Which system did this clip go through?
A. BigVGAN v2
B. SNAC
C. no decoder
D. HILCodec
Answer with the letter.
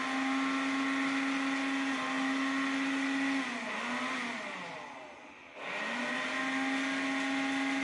C